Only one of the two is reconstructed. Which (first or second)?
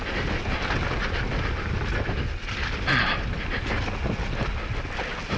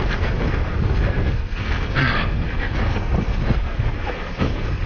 second